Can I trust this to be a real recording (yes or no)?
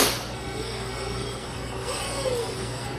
no